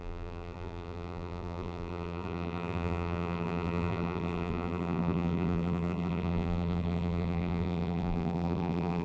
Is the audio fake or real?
fake